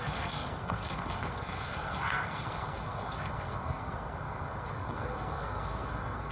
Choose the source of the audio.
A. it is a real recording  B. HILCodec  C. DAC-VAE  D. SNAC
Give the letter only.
D